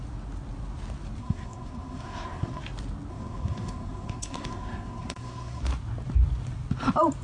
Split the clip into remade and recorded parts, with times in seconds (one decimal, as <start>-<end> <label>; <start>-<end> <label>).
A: 0.0-1.2 recorded; 1.2-2.6 remade; 2.6-3.1 recorded; 3.1-5.6 remade; 5.6-7.2 recorded